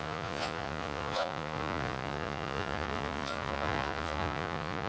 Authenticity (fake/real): fake